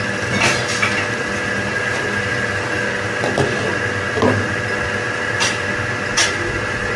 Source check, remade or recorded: recorded